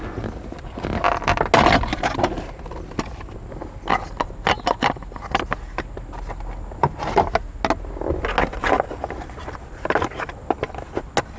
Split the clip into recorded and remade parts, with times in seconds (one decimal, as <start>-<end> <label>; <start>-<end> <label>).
0.0-11.4 recorded